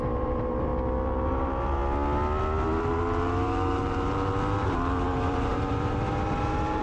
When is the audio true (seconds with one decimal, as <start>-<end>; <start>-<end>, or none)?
0.7-1.3; 1.8-2.8